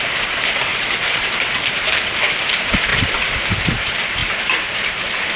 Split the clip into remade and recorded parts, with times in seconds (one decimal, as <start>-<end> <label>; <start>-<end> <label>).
0.0-5.4 remade